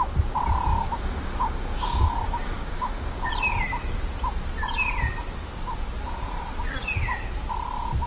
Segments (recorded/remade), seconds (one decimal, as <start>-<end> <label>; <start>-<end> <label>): 0.0-0.7 recorded; 0.7-3.3 remade; 3.3-8.1 recorded